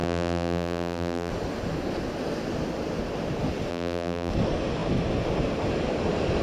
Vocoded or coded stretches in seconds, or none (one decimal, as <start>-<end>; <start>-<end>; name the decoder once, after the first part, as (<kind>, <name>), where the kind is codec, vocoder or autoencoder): 0.0-1.3 (vocoder, BigVGAN v2); 3.7-4.3